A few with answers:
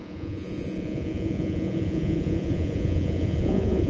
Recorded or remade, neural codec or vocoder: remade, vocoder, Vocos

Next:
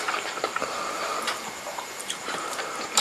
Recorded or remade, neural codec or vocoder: remade, vocoder, BigVGAN v2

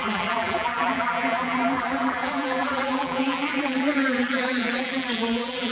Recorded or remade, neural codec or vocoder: remade, vocoder, BigVGAN v2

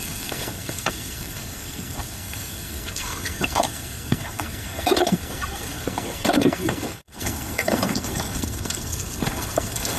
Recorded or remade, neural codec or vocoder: remade, codec, SNAC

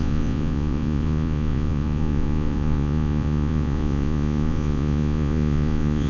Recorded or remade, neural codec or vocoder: remade, vocoder, Vocos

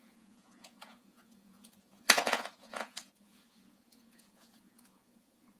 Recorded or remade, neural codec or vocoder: remade, vocoder, Vocos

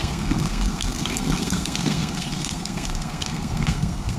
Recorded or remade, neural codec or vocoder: remade, codec, SNAC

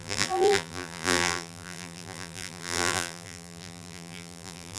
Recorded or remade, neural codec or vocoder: remade, vocoder, BigVGAN v2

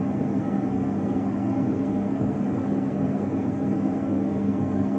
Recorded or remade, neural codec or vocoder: remade, codec, SNAC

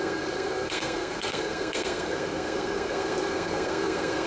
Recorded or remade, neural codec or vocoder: remade, codec, SNAC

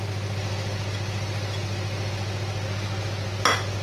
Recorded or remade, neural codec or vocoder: recorded